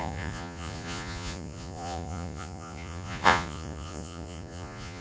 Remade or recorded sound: remade